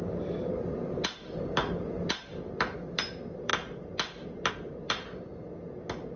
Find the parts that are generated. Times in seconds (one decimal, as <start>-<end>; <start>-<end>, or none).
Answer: 0.0-1.6; 2.2-3.5; 4.5-5.3